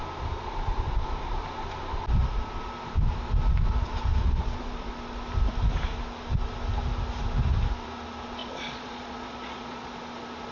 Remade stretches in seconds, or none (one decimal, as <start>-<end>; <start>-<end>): 4.1-4.9; 8.4-9.9